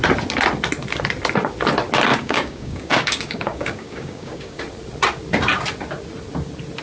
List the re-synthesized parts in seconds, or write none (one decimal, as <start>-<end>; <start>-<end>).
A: 2.1-4.6